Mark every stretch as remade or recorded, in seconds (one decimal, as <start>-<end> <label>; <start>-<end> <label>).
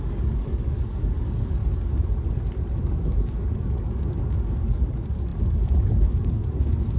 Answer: 0.0-1.6 remade; 1.6-2.7 recorded; 2.7-7.0 remade